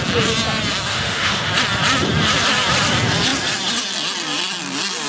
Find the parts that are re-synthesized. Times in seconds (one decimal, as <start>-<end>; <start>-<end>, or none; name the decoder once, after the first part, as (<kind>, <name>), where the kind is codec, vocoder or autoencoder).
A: 0.9-1.5 (autoencoder, DAC-VAE)